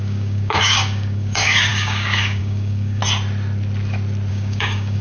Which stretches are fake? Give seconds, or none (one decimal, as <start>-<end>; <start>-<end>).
0.0-3.0; 4.3-5.0